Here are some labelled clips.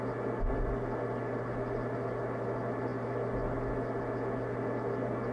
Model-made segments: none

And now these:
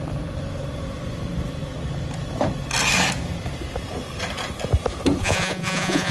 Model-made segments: 5.2-6.1 (vocoder, Vocos)